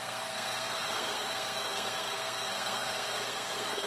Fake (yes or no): yes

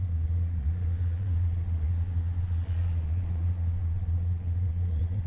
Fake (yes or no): yes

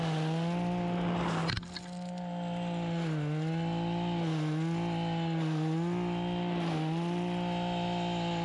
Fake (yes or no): no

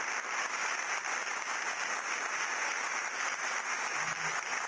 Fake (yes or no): no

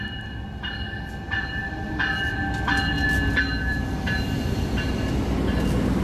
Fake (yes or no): no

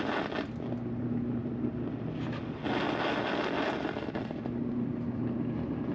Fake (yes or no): no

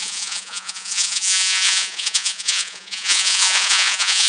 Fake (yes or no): yes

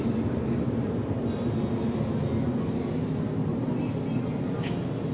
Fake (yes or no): no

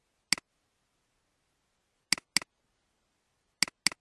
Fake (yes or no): no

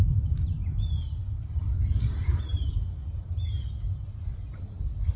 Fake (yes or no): no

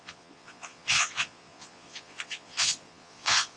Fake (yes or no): yes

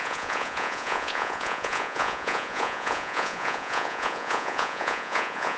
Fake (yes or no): yes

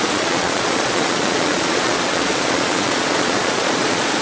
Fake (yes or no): yes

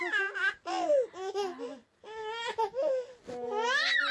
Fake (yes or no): no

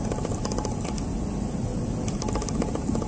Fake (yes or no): no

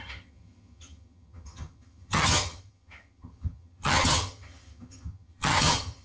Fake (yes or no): yes